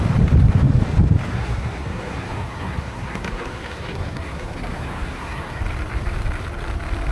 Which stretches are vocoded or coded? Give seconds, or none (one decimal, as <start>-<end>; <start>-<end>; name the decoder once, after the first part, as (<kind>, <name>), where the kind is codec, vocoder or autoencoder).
1.3-5.6 (codec, SNAC)